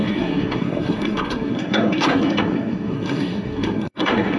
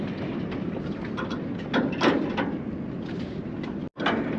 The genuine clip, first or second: second